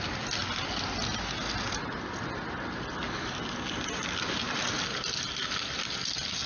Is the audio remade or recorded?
recorded